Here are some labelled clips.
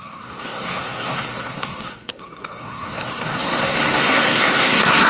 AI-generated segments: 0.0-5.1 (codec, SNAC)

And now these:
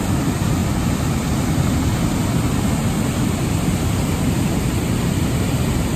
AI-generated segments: none